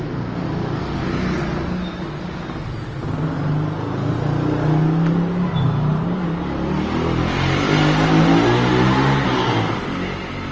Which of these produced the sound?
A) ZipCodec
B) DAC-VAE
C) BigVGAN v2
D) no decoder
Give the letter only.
D